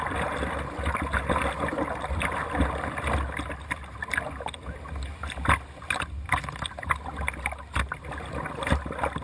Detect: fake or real real